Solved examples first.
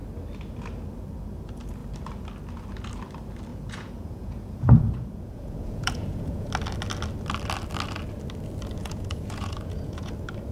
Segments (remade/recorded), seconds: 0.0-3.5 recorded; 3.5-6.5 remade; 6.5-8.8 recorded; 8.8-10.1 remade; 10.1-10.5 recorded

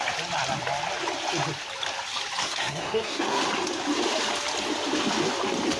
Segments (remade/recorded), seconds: 0.0-2.4 recorded; 2.4-3.4 remade; 3.4-5.8 recorded

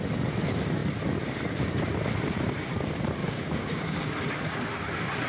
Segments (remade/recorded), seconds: 0.0-3.2 recorded; 3.2-4.2 remade; 4.2-5.3 recorded

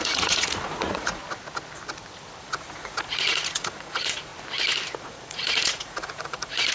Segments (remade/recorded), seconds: 0.0-1.2 remade; 1.2-2.4 recorded; 2.4-4.3 remade; 4.3-5.0 recorded; 5.0-6.7 remade

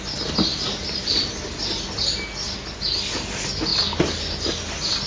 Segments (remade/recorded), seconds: 0.0-5.1 recorded

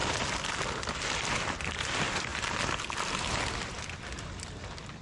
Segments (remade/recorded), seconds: 0.0-5.0 recorded

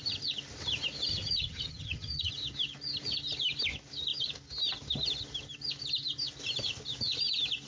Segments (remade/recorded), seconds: 0.0-1.1 recorded; 1.1-2.3 remade; 2.3-7.7 recorded